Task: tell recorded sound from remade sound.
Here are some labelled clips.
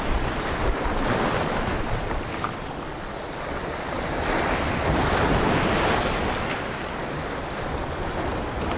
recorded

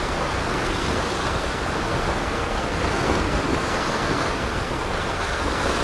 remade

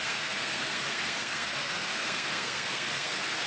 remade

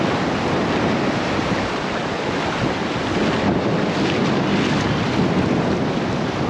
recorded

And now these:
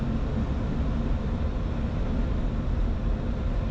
recorded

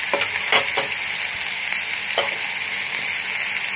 recorded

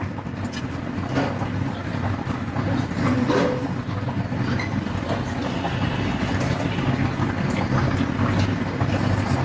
recorded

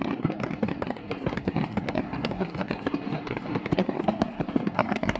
remade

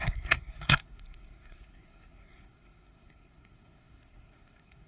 remade